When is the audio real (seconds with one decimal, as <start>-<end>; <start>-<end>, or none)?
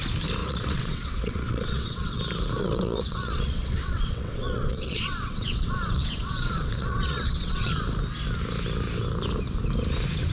0.0-0.4; 2.2-2.6; 7.7-10.3